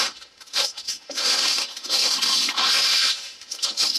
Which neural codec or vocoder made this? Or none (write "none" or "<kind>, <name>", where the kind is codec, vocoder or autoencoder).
autoencoder, DAC-VAE